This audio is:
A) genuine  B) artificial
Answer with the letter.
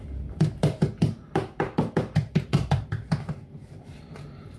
B